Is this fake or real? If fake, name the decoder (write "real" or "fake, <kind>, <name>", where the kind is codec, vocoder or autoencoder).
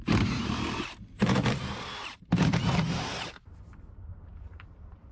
fake, vocoder, BigVGAN v2